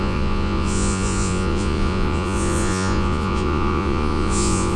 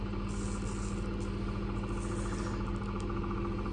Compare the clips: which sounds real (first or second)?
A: second